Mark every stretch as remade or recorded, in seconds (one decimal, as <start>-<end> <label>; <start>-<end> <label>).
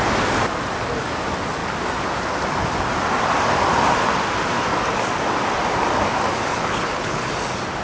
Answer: 0.0-6.5 recorded; 6.5-7.3 remade; 7.3-7.8 recorded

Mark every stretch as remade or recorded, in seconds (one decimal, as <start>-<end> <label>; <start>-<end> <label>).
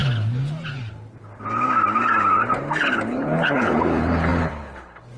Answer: 0.0-3.1 recorded; 3.1-5.2 remade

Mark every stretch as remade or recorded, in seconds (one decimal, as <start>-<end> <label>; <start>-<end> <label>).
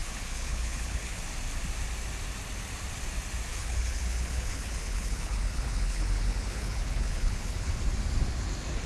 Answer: 0.0-1.2 remade; 1.2-3.5 recorded; 3.5-7.8 remade; 7.8-8.9 recorded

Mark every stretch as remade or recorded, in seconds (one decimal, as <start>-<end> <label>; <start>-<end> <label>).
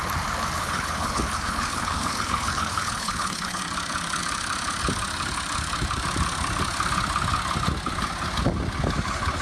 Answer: 0.0-0.6 recorded; 0.6-3.6 remade; 3.6-9.4 recorded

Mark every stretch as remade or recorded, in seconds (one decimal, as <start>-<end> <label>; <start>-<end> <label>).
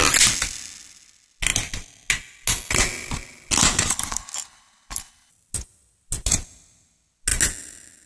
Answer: 0.0-3.9 recorded; 3.9-5.3 remade; 5.3-8.1 recorded